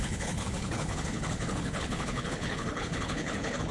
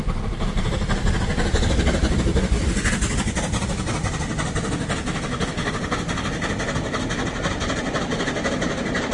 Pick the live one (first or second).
second